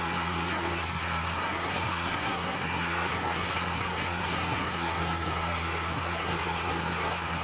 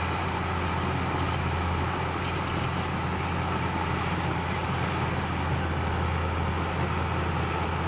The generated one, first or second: first